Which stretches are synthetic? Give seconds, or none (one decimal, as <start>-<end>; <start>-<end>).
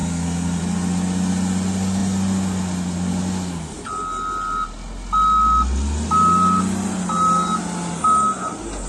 0.0-0.6